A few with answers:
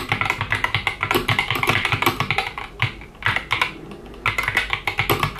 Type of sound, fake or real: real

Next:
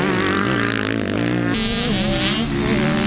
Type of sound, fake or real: real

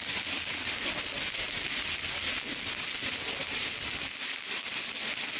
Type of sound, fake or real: real